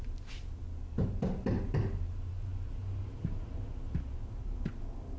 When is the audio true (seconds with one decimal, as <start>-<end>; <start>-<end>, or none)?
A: 0.0-5.2